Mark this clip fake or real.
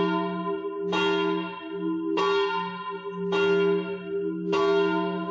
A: real